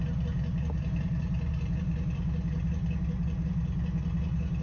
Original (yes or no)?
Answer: yes